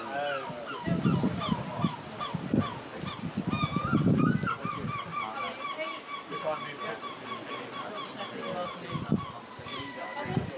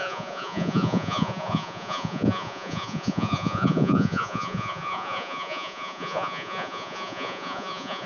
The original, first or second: first